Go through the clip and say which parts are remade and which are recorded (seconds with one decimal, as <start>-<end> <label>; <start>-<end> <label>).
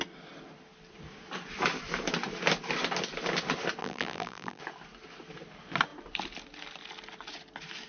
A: 0.0-3.8 recorded; 3.8-4.6 remade; 4.6-7.9 recorded